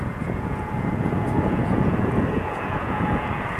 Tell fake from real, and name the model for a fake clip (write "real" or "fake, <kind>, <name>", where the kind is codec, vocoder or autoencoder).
fake, vocoder, Vocos